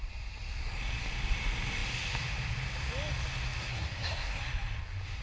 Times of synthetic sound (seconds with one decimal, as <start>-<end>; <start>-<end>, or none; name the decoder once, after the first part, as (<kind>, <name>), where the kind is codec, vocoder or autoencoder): 3.6-4.4 (codec, SNAC)